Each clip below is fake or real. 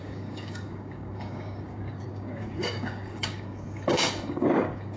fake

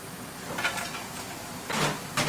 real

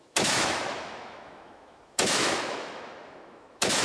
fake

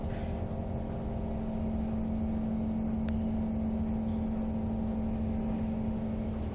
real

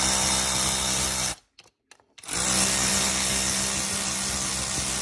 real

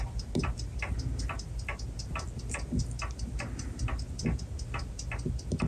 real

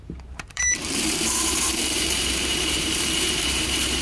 fake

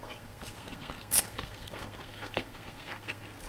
fake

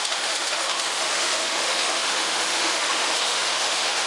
fake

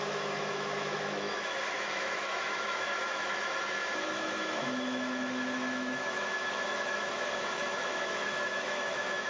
fake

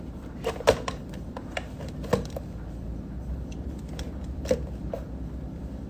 fake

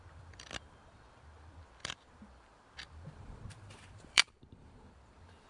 fake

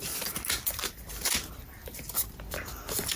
fake